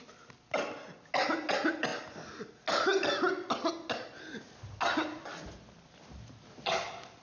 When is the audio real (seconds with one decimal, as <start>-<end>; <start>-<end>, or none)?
0.0-7.2